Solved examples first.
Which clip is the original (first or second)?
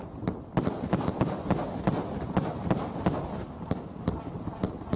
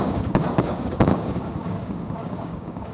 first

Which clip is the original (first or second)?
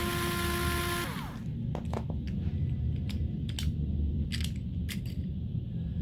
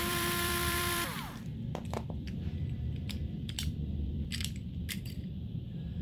first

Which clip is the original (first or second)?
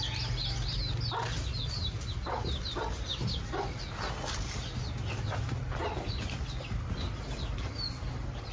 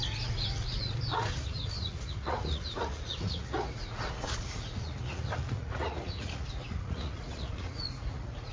first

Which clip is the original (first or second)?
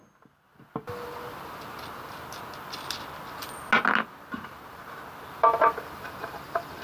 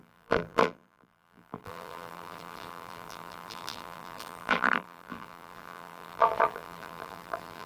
first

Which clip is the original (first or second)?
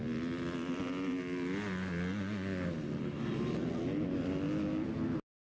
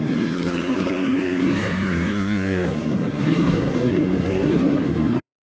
first